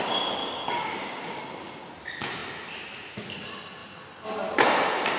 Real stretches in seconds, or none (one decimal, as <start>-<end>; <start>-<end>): 0.0-0.4; 1.4-5.2